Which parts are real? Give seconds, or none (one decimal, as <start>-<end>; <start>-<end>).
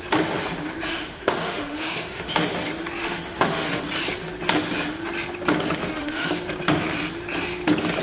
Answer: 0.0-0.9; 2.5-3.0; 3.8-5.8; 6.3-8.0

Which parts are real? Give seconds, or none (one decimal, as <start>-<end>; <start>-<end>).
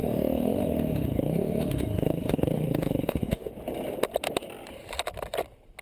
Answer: 3.5-5.8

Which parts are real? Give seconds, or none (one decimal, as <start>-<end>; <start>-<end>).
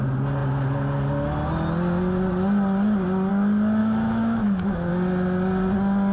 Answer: 0.0-3.8; 4.9-6.1